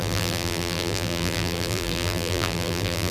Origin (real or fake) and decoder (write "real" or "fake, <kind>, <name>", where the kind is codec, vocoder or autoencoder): fake, vocoder, BigVGAN v2